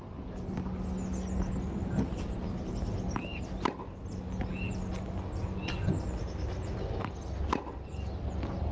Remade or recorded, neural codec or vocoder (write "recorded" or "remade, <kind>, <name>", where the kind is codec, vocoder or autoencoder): recorded